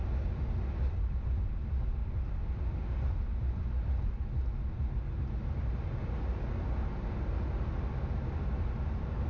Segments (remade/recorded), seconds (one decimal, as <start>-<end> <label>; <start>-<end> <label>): 0.0-9.3 recorded